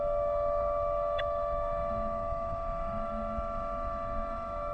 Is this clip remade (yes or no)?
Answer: yes